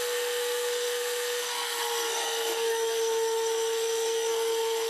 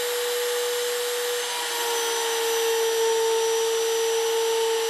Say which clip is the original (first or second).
second